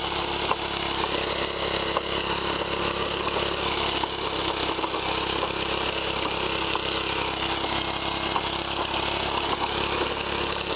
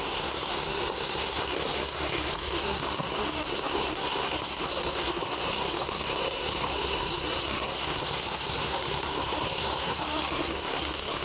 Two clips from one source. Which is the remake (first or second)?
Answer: second